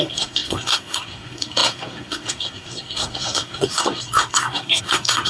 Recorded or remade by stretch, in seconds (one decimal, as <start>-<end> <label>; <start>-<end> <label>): 0.0-5.3 remade